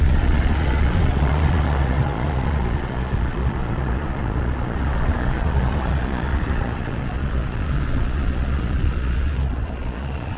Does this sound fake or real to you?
fake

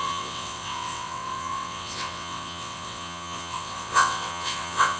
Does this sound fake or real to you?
fake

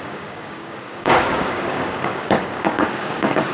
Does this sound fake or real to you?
fake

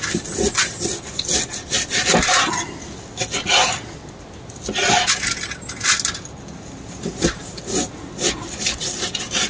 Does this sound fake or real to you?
real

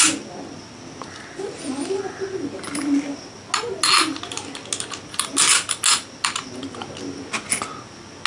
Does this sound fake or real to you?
real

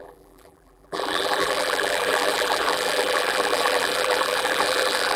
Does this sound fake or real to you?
fake